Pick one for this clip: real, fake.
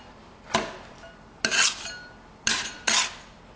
real